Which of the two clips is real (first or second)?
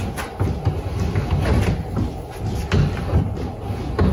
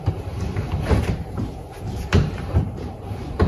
first